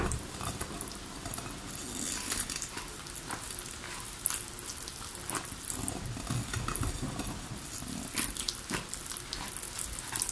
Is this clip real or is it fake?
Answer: real